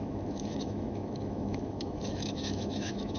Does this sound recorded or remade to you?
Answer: remade